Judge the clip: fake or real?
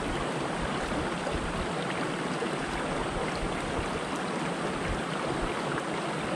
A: real